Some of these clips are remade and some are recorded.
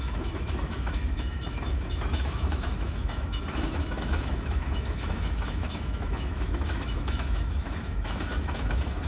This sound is remade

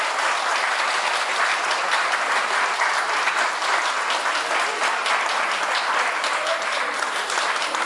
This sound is recorded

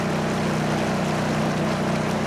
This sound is recorded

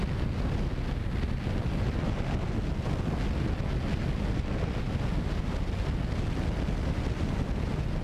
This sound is recorded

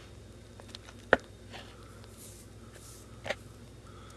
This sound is recorded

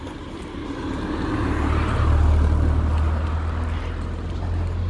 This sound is recorded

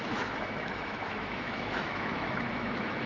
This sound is remade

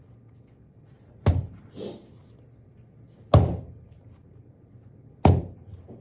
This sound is recorded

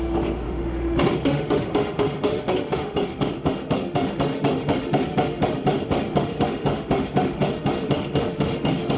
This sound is remade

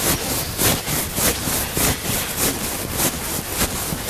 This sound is recorded